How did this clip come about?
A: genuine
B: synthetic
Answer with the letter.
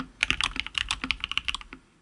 A